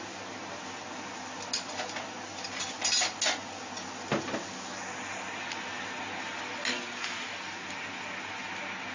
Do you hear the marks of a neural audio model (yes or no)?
no